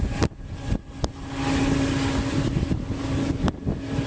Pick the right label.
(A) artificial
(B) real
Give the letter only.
B